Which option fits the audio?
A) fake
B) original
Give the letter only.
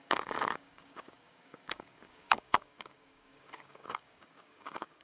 A